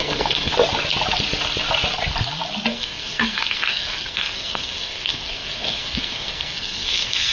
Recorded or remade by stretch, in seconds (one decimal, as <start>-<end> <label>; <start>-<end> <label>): 0.0-0.5 remade; 0.5-2.7 recorded; 2.7-7.3 remade